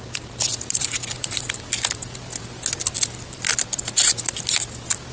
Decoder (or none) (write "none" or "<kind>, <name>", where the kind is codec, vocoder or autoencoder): none